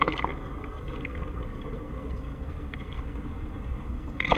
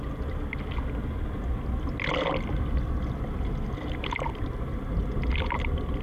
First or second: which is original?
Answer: second